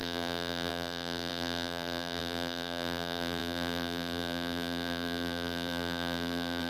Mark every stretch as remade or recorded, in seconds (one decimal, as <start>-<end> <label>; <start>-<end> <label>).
0.0-6.7 remade